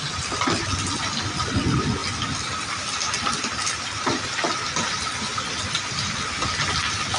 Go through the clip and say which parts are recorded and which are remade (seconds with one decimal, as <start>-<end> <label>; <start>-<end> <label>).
0.0-7.2 recorded

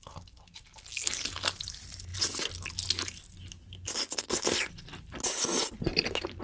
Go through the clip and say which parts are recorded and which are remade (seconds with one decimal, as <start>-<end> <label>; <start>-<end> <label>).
0.0-6.4 recorded

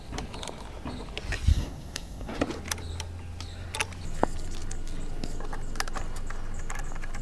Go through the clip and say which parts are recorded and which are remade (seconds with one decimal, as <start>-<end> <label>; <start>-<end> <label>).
0.0-1.5 recorded; 1.5-2.4 remade; 2.4-7.2 recorded

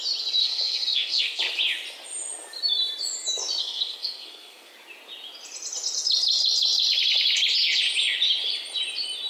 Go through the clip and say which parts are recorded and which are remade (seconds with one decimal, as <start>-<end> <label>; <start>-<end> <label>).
0.0-0.4 recorded; 0.4-1.4 remade; 1.4-3.6 recorded; 3.6-4.7 remade; 4.7-9.3 recorded

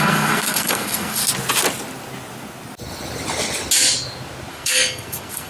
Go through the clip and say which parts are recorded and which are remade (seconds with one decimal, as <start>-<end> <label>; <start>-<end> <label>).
0.0-1.2 remade; 1.2-4.5 recorded; 4.5-5.5 remade

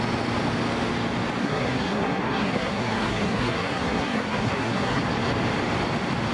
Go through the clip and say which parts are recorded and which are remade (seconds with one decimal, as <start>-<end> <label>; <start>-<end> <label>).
0.0-1.4 recorded; 1.4-5.0 remade; 5.0-6.3 recorded